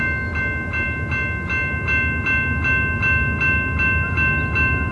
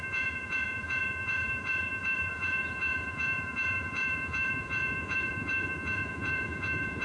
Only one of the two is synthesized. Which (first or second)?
second